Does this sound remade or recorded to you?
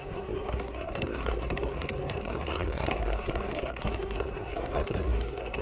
remade